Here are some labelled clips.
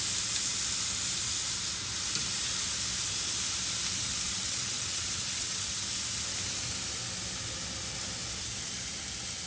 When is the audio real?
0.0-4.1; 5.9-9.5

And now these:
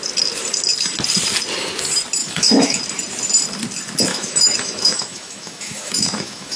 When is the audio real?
0.0-2.2; 2.8-4.1

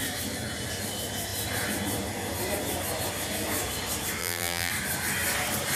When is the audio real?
0.0-4.2; 4.7-5.8

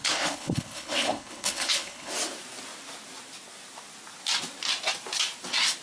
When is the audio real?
2.1-5.8

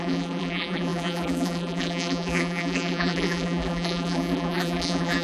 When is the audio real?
none

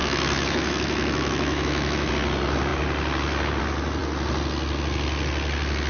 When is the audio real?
2.1-5.9